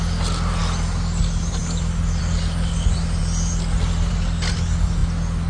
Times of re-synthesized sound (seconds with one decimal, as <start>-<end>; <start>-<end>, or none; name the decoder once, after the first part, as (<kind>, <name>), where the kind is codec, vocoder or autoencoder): none